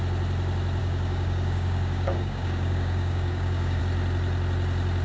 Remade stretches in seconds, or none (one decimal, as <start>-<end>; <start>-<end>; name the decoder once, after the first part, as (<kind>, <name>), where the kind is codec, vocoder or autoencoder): 0.8-3.8 (codec, DAC)